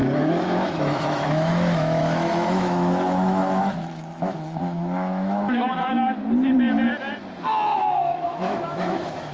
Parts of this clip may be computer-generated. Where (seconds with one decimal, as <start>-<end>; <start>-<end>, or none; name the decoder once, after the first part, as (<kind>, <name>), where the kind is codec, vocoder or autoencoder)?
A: 0.0-6.2 (autoencoder, DAC-VAE); 7.8-9.3